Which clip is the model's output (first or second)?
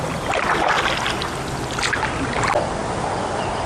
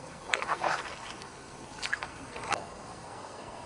second